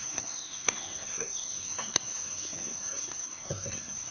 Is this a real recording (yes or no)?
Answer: no